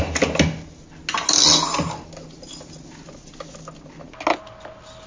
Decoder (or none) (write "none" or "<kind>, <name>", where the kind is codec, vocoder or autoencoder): none